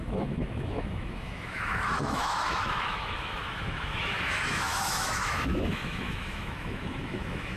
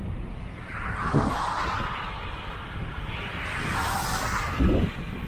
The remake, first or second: first